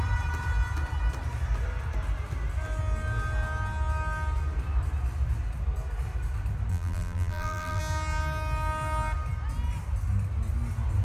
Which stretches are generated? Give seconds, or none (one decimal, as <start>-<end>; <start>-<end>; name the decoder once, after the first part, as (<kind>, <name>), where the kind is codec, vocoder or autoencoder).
6.7-7.8 (vocoder, BigVGAN v2)